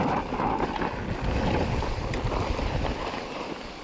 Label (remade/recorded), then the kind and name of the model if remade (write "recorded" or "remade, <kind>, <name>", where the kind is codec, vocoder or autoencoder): recorded